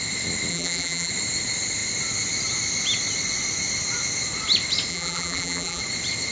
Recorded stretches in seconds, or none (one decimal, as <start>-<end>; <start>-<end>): 0.0-0.5; 1.1-4.9; 5.8-6.3